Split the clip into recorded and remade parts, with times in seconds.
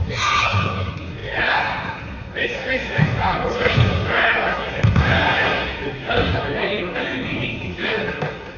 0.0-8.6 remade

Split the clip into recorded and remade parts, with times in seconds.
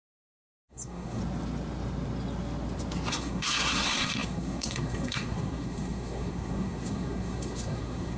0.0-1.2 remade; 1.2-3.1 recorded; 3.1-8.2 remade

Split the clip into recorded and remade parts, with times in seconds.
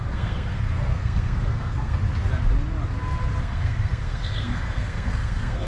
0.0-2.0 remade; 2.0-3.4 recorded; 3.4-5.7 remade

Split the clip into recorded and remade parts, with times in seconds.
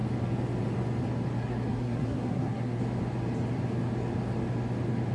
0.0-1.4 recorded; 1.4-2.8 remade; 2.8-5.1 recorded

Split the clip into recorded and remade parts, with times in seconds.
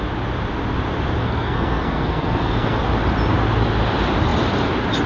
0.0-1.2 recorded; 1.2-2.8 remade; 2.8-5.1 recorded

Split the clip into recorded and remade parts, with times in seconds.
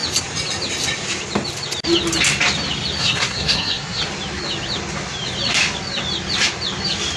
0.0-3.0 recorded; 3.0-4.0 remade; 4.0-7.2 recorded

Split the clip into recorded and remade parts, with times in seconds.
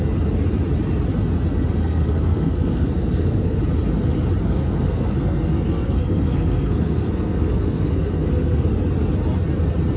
0.0-1.8 recorded; 1.8-3.6 remade; 3.6-4.4 recorded; 4.4-8.7 remade; 8.7-10.0 recorded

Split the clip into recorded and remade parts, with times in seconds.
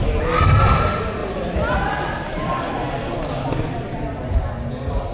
0.0-5.1 recorded